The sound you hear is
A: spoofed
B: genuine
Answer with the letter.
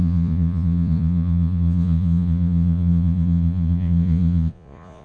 A